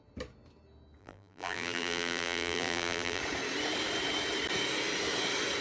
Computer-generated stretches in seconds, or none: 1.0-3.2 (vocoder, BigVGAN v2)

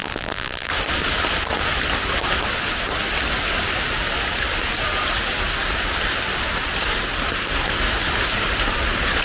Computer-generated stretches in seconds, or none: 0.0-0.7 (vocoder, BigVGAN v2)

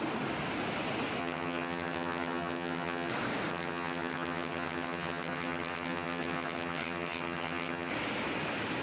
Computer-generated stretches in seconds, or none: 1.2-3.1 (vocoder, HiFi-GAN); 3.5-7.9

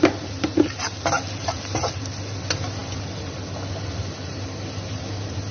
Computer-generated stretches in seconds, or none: none

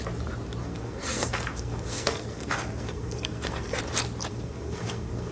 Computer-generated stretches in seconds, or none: 0.6-3.8 (codec, SNAC); 4.3-5.3

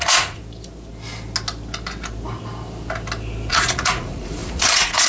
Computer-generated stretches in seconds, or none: 0.0-0.4 (vocoder, Vocos); 3.5-5.1

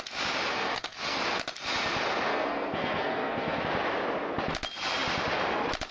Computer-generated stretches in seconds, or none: 0.5-1.2 (codec, SNAC); 2.3-3.6